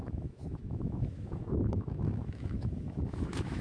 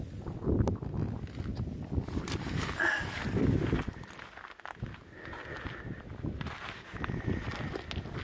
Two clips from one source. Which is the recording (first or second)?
second